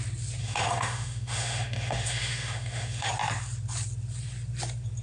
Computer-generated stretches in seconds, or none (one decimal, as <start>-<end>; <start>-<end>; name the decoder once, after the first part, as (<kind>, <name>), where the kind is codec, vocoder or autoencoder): 0.4-3.1 (autoencoder, DAC-VAE)